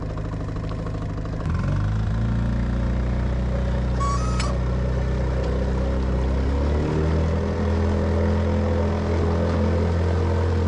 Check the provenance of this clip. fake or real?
real